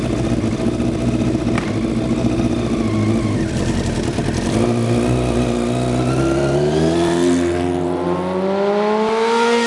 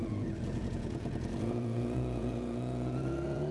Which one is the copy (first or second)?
second